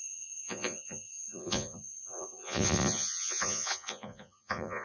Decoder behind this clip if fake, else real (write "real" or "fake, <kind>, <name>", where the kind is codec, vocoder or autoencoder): fake, vocoder, Vocos